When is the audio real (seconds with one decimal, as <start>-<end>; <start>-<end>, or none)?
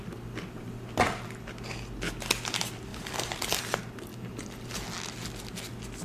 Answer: 0.0-2.9; 3.6-4.1; 4.8-6.0